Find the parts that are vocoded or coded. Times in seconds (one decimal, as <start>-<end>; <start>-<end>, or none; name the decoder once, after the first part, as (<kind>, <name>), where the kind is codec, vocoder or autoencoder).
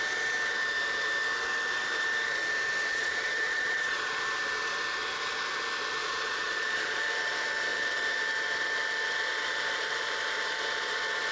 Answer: 2.9-4.2 (vocoder, Vocos); 6.0-7.0